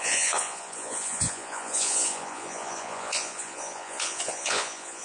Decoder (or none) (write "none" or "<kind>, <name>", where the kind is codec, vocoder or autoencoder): vocoder, Vocos